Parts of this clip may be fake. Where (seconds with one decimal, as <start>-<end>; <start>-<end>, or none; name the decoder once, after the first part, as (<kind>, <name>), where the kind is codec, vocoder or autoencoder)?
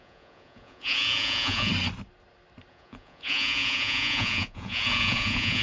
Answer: 0.0-1.7 (vocoder, Vocos); 2.7-5.6